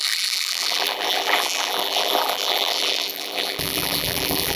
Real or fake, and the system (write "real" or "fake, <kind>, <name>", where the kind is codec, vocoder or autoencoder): fake, vocoder, BigVGAN v2